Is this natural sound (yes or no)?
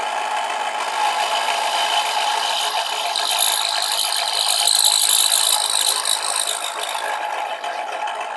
yes